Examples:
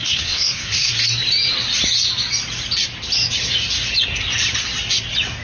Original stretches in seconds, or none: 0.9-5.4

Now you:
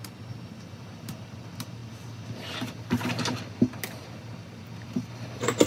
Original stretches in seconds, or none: 0.0-5.7

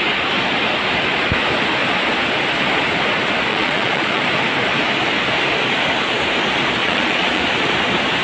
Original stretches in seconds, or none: 0.0-3.5; 4.2-6.8; 7.4-8.2